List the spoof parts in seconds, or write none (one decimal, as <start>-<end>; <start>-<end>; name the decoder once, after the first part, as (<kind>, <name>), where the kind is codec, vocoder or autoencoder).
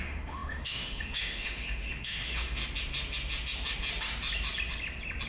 0.0-2.6 (autoencoder, DAC-VAE)